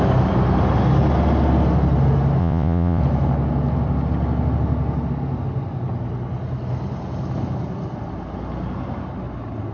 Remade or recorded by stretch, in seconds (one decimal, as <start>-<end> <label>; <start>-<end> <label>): 0.0-2.4 recorded; 2.4-3.0 remade; 3.0-9.7 recorded